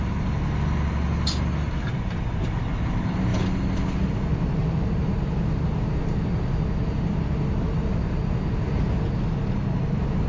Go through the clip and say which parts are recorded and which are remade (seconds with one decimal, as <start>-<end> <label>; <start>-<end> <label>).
0.0-10.3 recorded